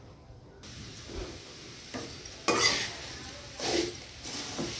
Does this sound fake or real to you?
real